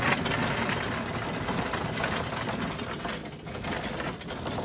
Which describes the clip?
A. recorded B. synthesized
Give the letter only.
A